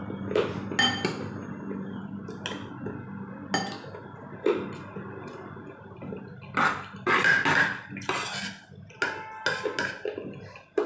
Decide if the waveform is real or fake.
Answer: real